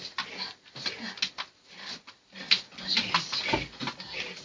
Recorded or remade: recorded